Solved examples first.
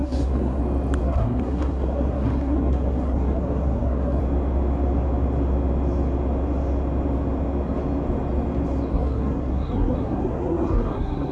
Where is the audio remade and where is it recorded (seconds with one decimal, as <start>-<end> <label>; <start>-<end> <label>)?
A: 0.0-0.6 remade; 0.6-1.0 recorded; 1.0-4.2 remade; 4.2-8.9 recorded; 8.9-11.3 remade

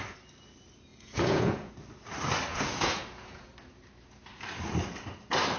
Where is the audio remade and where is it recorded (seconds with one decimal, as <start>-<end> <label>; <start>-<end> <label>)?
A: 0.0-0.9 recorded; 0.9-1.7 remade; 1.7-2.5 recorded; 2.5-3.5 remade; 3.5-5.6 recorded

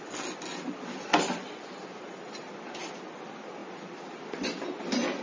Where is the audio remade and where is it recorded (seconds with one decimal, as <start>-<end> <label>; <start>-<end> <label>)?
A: 0.0-5.2 recorded

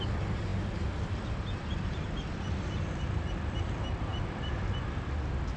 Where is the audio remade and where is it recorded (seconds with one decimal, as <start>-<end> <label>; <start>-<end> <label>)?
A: 0.0-5.6 recorded

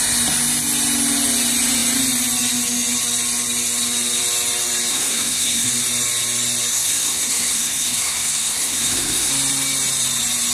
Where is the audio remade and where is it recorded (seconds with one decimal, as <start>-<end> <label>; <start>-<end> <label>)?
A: 0.0-4.9 recorded; 4.9-5.7 remade; 5.7-6.7 recorded; 6.7-9.3 remade; 9.3-10.5 recorded